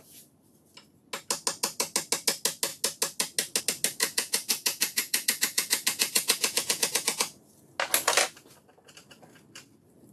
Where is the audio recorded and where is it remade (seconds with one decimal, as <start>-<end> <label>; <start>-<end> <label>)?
0.0-4.0 recorded; 4.0-7.6 remade; 7.6-10.1 recorded